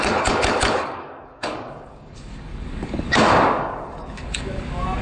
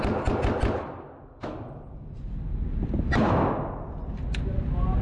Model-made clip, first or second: first